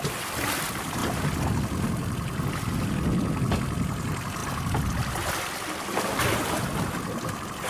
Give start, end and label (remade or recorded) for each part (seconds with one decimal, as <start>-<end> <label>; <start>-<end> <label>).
0.0-7.7 recorded